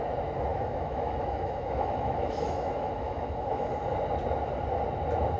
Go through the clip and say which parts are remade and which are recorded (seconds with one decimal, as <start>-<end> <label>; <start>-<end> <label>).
0.0-0.5 recorded; 0.5-3.7 remade; 3.7-5.4 recorded